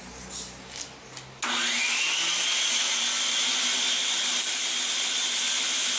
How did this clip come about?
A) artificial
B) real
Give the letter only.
B